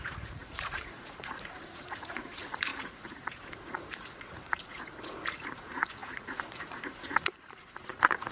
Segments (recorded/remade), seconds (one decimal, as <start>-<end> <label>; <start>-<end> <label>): 0.0-8.3 remade